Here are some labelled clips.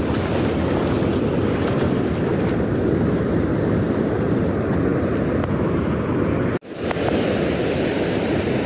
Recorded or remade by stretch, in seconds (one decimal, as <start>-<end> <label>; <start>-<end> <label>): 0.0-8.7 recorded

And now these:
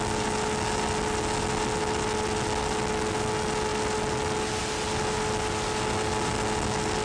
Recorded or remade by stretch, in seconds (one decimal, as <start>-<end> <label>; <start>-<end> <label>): 0.0-7.0 recorded

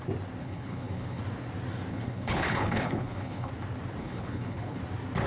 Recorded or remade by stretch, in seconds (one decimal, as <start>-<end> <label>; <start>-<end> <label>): 0.0-0.4 recorded; 0.4-1.2 remade; 1.2-1.9 recorded; 1.9-3.5 remade; 3.5-4.0 recorded; 4.0-4.8 remade; 4.8-5.3 recorded

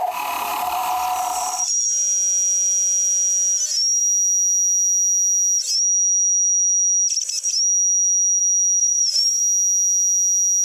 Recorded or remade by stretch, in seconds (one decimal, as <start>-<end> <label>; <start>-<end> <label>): 0.0-0.5 recorded; 0.5-1.7 remade; 1.7-8.8 recorded; 8.8-9.4 remade; 9.4-10.6 recorded

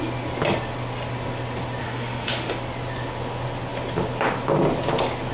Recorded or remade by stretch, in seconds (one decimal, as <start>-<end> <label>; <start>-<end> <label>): 0.0-1.8 recorded; 1.8-2.5 remade; 2.5-5.3 recorded

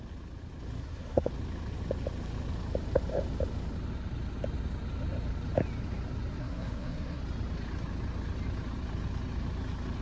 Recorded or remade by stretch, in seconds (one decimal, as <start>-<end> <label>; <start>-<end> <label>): 0.0-0.8 recorded; 0.8-1.3 remade; 1.3-6.4 recorded; 6.4-7.2 remade; 7.2-10.0 recorded

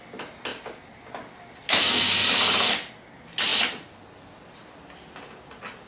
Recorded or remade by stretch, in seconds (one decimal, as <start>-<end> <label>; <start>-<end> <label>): 0.0-5.9 recorded